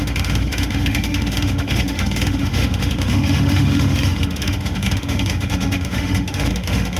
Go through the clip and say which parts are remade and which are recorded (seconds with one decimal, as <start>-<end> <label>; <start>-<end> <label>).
0.0-7.0 remade